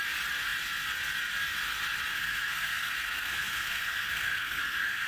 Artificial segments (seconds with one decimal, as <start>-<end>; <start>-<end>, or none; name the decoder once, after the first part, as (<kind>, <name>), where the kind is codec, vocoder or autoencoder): 2.1-5.1 (codec, SNAC)